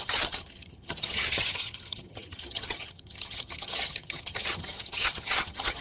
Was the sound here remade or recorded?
remade